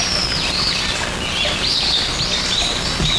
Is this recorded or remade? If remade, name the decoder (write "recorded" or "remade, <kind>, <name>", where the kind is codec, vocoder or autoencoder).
recorded